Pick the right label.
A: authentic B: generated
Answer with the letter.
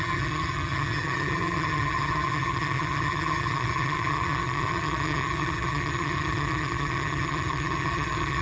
B